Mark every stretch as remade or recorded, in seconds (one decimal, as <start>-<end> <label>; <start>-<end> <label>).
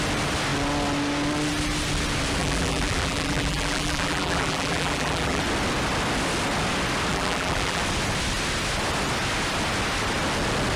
0.0-2.4 recorded; 2.4-5.4 remade; 5.4-7.1 recorded; 7.1-7.8 remade; 7.8-10.8 recorded